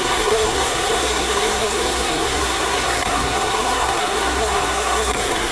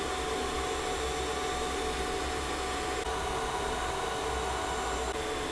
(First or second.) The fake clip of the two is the first